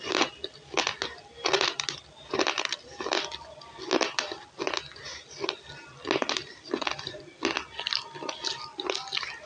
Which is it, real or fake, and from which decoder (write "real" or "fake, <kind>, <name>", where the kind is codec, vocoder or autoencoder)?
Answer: real